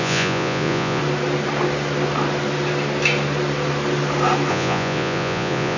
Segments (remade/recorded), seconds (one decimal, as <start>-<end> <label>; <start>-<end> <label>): 0.0-1.0 remade; 1.0-4.5 recorded; 4.5-5.8 remade